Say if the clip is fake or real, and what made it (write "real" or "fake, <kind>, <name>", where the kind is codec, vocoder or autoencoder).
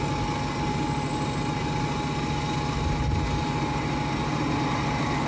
real